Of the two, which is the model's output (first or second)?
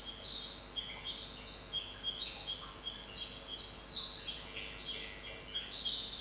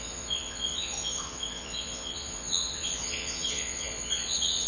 second